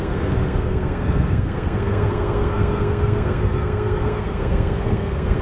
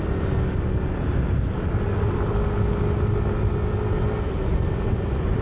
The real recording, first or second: second